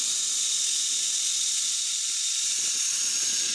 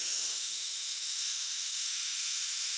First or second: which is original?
first